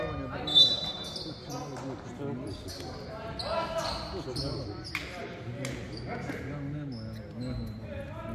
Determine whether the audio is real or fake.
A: real